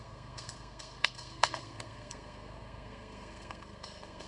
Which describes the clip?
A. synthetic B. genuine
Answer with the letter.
A